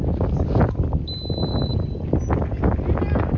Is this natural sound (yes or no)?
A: yes